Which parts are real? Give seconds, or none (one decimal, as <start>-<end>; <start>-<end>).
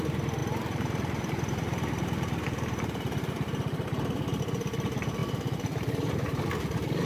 0.0-0.4; 4.4-7.1